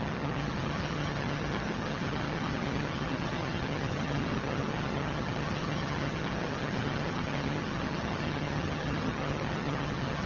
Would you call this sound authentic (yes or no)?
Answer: no